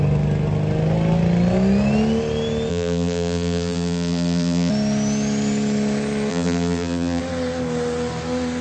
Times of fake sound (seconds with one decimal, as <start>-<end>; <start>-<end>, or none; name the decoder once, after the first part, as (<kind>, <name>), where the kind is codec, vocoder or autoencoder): 2.7-4.7 (vocoder, BigVGAN v2); 6.3-7.2